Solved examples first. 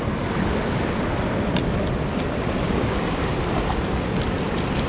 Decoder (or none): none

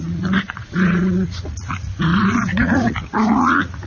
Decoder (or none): vocoder, Vocos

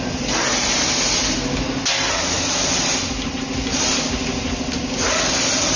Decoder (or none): none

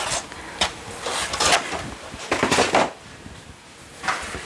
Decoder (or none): none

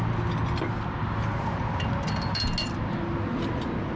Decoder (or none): none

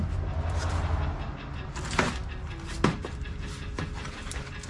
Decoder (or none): none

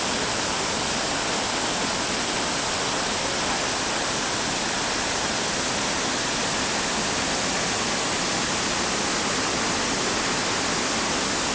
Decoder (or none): none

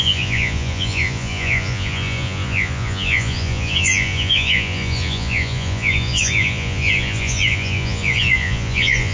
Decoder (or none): vocoder, Vocos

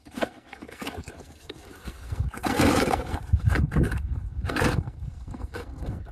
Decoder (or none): codec, SNAC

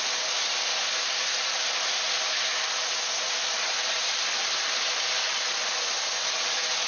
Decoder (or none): none